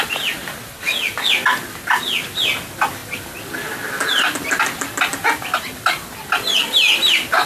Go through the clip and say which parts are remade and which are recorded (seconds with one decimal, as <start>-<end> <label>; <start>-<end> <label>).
0.0-7.5 recorded